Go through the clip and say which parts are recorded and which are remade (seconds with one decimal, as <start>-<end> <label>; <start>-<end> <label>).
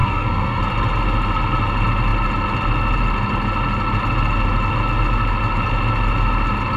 0.0-0.6 remade; 0.6-6.8 recorded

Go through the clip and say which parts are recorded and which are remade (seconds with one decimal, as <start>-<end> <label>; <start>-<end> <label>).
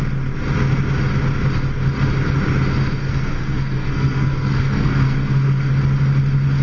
0.0-3.0 recorded; 3.0-5.7 remade; 5.7-6.6 recorded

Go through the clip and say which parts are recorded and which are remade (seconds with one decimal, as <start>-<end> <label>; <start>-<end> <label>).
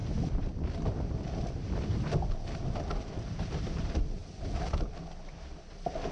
0.0-6.1 recorded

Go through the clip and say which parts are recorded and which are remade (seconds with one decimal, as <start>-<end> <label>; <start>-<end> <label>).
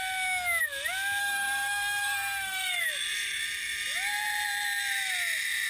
0.0-1.2 recorded; 1.2-2.8 remade; 2.8-5.7 recorded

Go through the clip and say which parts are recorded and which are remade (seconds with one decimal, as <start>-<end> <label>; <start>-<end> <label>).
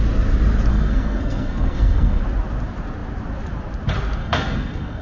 0.0-0.7 recorded; 0.7-2.2 remade; 2.2-4.2 recorded; 4.2-5.0 remade